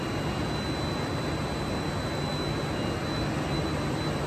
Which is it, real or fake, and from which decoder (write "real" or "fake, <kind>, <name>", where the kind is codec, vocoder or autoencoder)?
real